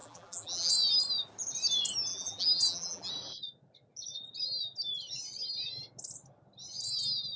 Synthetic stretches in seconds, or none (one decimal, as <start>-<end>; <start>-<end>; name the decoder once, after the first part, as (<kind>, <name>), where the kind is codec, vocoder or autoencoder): 0.0-0.7 (vocoder, BigVGAN v2); 2.1-3.1

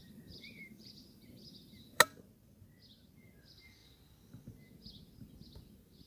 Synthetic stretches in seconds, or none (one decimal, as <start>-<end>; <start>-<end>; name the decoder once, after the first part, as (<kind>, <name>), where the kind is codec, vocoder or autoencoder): 0.0-2.0 (vocoder, BigVGAN v2)

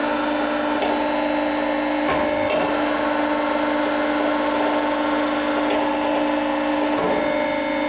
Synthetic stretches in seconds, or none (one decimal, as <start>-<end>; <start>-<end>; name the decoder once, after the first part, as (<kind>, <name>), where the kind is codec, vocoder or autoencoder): none